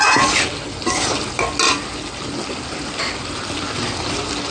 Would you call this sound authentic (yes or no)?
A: yes